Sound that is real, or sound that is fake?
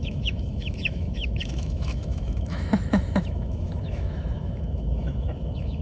fake